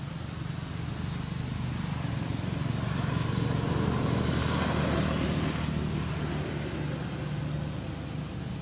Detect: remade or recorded recorded